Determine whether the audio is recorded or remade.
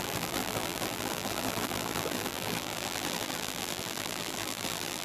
remade